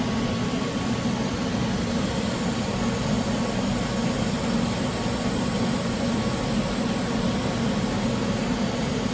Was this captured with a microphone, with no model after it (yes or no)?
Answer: yes